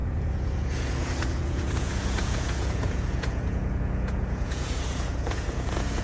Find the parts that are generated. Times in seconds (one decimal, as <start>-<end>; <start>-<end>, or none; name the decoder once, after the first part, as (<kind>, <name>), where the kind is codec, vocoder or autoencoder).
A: 0.0-6.0 (vocoder, Vocos)